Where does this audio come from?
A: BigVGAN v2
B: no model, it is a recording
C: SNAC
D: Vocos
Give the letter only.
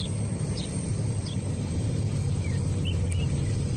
B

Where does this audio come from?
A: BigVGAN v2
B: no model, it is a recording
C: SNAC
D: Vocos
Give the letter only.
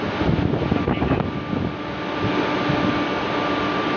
B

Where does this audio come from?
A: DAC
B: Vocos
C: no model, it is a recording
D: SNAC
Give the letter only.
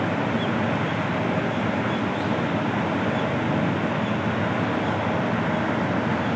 C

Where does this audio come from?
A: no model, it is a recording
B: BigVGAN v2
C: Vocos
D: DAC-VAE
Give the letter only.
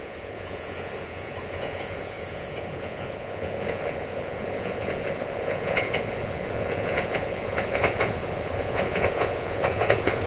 C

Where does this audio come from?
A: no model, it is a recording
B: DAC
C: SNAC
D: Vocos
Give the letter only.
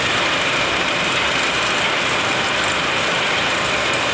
A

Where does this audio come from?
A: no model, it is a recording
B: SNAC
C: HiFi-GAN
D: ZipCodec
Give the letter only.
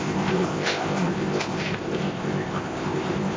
D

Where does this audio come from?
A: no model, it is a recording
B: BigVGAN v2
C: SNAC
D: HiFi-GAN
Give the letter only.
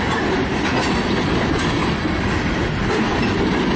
A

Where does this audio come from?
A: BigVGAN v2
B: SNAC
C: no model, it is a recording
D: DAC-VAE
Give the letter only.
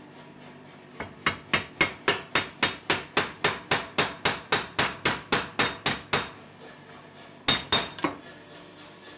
C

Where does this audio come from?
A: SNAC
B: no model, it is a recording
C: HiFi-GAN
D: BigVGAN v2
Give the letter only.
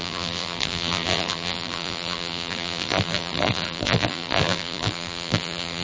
D